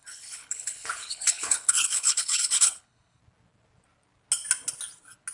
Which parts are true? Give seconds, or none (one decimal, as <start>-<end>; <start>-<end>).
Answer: 3.2-5.3